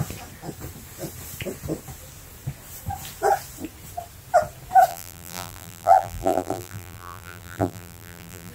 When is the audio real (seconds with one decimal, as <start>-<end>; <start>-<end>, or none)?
0.0-4.9